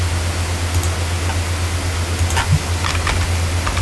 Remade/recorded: recorded